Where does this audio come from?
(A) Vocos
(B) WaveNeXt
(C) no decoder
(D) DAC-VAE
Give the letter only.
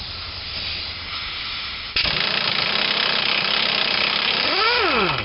C